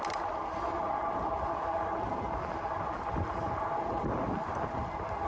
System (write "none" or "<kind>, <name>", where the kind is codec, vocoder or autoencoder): none